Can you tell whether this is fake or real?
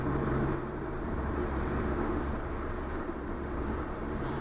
fake